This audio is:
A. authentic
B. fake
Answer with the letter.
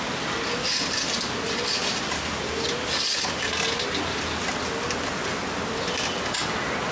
A